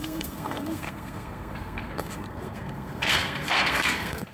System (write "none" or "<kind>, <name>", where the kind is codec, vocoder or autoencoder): codec, SNAC